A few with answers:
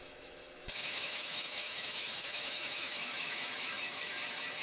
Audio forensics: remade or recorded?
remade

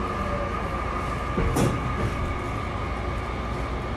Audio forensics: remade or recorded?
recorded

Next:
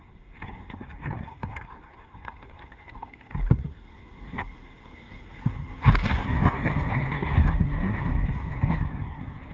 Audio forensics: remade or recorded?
remade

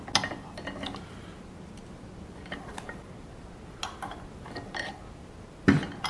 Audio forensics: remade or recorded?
recorded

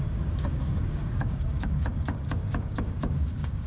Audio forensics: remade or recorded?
remade